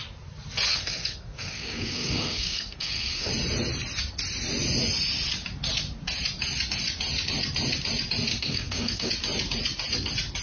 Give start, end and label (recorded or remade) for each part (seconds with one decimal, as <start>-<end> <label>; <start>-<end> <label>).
0.0-0.7 recorded; 0.7-3.3 remade; 3.3-8.3 recorded; 8.3-9.1 remade; 9.1-10.4 recorded